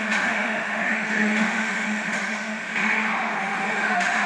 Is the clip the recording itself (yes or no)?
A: no